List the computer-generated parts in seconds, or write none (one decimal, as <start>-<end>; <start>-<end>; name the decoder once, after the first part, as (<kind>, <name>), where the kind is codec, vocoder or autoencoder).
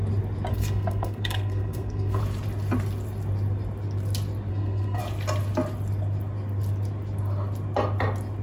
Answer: 0.5-2.2 (codec, SNAC); 4.5-5.0